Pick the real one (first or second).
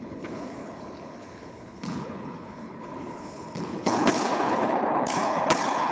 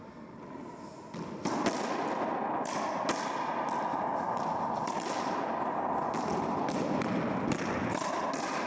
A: second